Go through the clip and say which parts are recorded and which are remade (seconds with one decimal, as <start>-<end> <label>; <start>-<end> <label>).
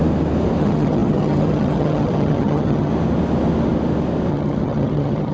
0.0-0.6 recorded; 0.6-2.9 remade; 2.9-4.3 recorded; 4.3-5.3 remade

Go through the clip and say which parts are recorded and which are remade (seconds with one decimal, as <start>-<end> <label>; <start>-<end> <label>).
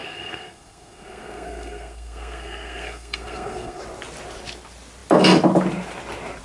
0.0-3.8 remade; 3.8-6.4 recorded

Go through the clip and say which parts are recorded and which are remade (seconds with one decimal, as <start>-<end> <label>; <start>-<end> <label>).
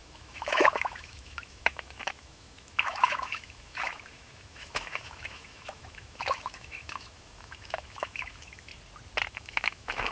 0.0-8.7 remade; 8.7-9.3 recorded; 9.3-10.1 remade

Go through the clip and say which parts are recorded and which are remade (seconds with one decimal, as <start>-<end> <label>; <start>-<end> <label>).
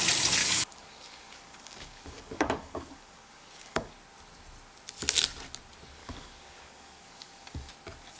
0.0-0.4 recorded; 0.4-3.9 remade; 3.9-6.0 recorded; 6.0-7.7 remade; 7.7-8.2 recorded